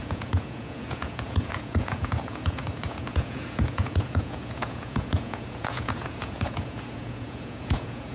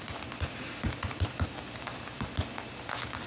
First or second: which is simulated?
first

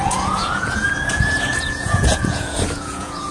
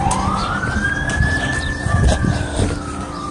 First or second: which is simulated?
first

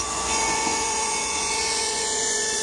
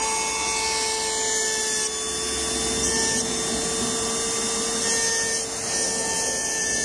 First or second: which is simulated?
first